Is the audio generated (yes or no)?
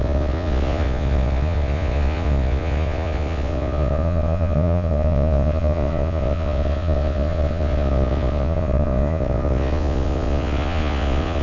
yes